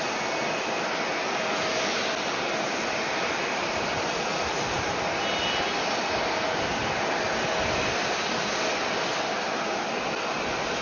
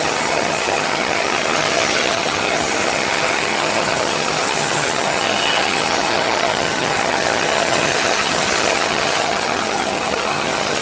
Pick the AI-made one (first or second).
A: second